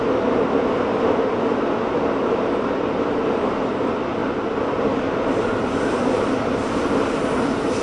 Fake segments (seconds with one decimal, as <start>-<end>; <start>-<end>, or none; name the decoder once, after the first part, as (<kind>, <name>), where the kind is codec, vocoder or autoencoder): 4.2-6.2 (vocoder, BigVGAN v2)